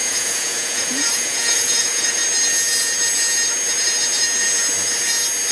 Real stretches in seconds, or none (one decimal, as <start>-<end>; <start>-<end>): 2.2-5.5